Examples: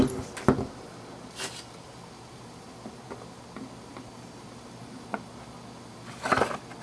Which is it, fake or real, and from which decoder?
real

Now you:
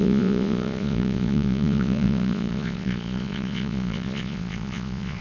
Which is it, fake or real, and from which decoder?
fake, vocoder, Vocos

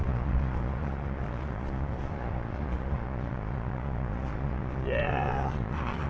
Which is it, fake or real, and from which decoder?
fake, vocoder, Vocos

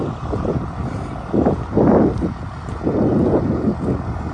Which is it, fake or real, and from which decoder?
real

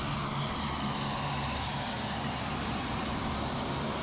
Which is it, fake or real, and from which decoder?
real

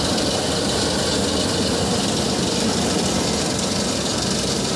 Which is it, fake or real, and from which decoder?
real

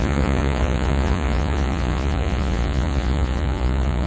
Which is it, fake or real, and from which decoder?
fake, vocoder, Vocos